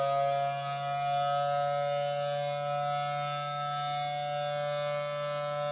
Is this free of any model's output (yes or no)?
yes